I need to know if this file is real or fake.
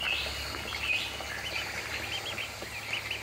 real